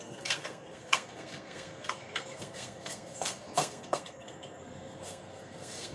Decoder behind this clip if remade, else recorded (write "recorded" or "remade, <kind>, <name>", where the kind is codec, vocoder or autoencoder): remade, codec, SNAC